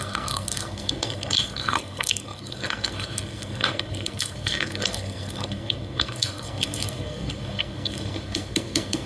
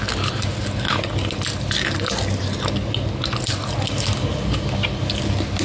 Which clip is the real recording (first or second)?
second